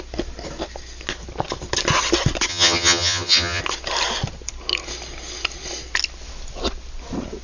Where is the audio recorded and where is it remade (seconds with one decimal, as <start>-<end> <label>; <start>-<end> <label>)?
0.0-2.5 recorded; 2.5-3.6 remade; 3.6-7.4 recorded